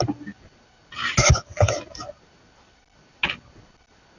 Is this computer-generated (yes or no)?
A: no